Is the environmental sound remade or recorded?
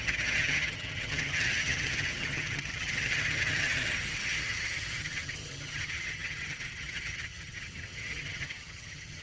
remade